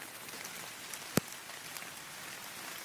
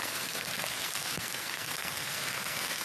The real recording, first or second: first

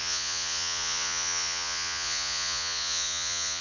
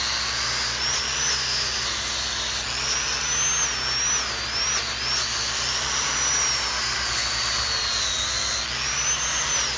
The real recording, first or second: second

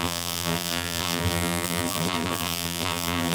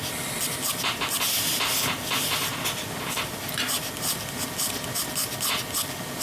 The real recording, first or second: second